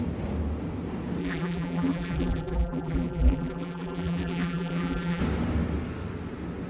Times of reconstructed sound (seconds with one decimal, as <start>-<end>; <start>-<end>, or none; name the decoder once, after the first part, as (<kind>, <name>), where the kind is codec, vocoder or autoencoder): 1.2-5.2 (vocoder, BigVGAN v2)